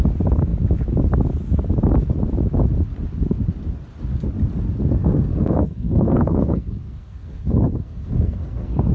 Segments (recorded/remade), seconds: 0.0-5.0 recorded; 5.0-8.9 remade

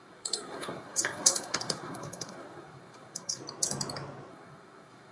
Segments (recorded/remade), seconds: 0.0-3.4 remade; 3.4-4.3 recorded; 4.3-5.1 remade

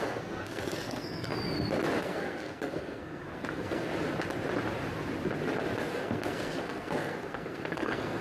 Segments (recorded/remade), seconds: 0.0-1.3 remade; 1.3-2.0 recorded; 2.0-3.9 remade; 3.9-5.9 recorded; 5.9-8.2 remade

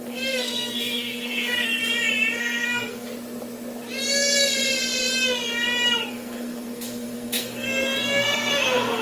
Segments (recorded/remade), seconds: 0.0-1.8 remade; 1.8-2.4 recorded; 2.4-3.1 remade; 3.1-6.1 recorded; 6.1-9.0 remade